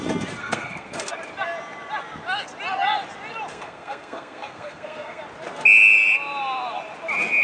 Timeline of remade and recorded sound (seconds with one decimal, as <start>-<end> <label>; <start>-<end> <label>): 0.0-0.4 recorded; 0.4-1.1 remade; 1.1-3.5 recorded; 3.5-5.2 remade; 5.2-7.4 recorded